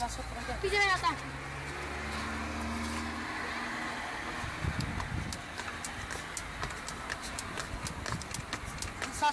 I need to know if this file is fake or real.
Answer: real